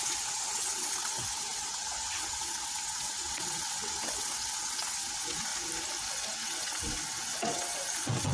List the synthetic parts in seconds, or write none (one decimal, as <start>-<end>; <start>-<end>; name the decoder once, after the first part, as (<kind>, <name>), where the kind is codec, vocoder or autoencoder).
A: 0.0-5.5 (vocoder, WaveNeXt); 6.1-8.3